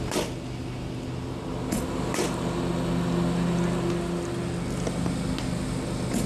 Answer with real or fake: real